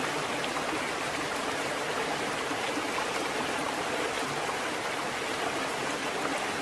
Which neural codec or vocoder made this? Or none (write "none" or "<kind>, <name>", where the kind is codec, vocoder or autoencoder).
none